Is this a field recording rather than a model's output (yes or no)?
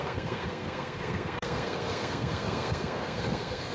no